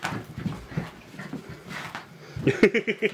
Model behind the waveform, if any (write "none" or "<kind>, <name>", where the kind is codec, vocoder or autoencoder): none